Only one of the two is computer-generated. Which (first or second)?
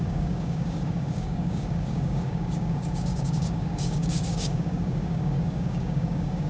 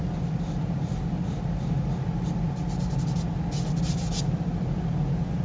first